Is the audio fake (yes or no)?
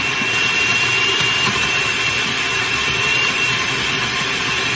no